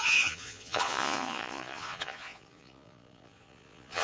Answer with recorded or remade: remade